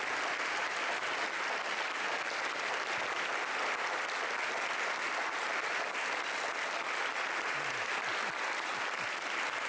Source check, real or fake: real